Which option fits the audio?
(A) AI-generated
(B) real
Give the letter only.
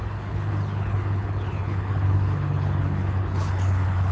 A